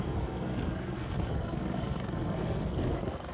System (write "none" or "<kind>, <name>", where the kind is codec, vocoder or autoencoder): codec, SNAC